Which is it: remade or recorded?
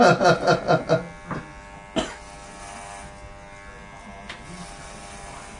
recorded